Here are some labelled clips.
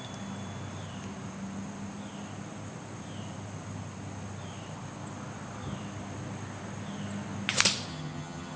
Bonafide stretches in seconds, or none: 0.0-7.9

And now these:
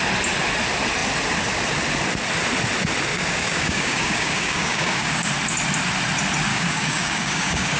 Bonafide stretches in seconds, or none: 0.0-3.1; 5.3-6.5

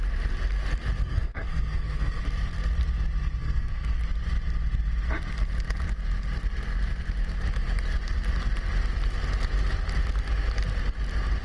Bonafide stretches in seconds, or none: 0.0-1.0; 2.2-3.4; 4.0-11.4